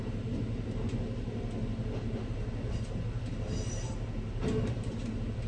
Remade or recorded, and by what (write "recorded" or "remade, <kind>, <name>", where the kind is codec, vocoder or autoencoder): recorded